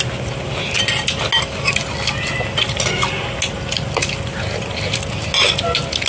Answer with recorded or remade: recorded